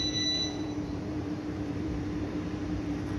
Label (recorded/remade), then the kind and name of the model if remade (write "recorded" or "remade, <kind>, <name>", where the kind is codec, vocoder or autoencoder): remade, vocoder, BigVGAN v2